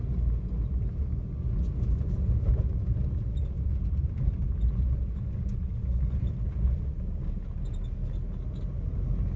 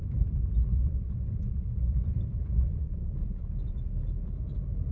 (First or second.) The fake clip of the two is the second